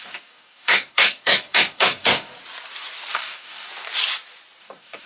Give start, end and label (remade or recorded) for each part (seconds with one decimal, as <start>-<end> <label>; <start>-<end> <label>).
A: 0.0-2.3 remade; 2.3-3.1 recorded; 3.1-3.7 remade; 3.7-4.6 recorded; 4.6-5.1 remade